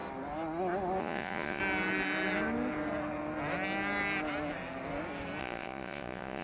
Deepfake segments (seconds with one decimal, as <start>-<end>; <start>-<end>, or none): 1.0-1.6; 5.4-6.4